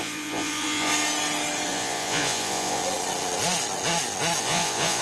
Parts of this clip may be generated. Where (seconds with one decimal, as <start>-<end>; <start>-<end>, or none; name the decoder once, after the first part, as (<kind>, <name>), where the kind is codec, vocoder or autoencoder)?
0.0-0.9 (vocoder, Vocos); 1.7-2.8; 4.4-5.0